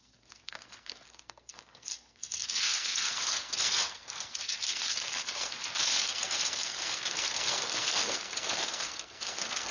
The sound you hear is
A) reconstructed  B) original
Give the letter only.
A